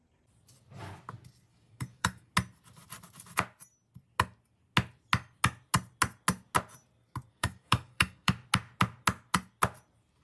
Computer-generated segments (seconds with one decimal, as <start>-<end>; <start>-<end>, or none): 1.5-2.3; 7.3-8.3